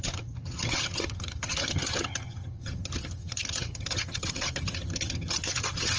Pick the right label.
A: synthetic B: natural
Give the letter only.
A